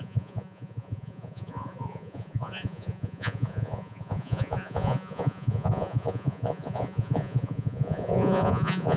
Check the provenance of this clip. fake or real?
fake